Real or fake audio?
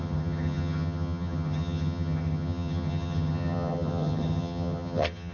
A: fake